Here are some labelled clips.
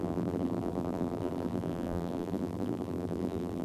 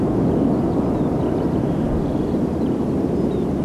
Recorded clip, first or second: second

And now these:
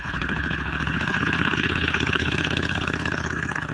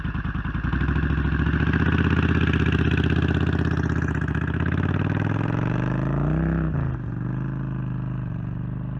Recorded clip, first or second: second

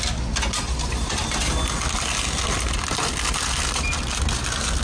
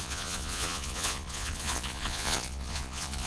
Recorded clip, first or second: first